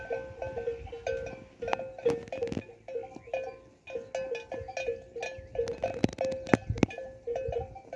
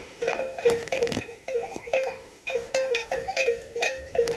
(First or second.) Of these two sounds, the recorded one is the first